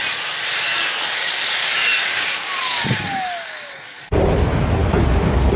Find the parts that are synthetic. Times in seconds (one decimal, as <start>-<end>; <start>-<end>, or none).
0.7-4.1; 4.8-5.6